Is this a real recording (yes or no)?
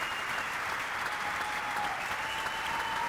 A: yes